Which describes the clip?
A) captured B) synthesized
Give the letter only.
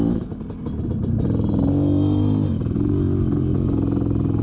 A